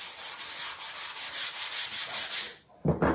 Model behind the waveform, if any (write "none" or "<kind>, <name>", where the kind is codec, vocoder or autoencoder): none